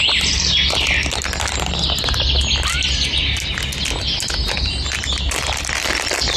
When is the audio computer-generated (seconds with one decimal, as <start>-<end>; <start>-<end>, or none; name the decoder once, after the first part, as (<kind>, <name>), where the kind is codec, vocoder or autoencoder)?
none